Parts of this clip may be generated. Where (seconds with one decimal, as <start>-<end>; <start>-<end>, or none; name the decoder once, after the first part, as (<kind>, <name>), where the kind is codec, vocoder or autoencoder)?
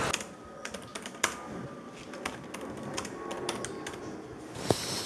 none